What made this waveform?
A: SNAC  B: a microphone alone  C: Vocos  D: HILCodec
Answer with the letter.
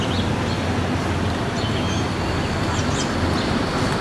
B